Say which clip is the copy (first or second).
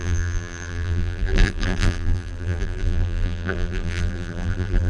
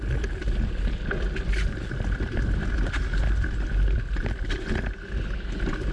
first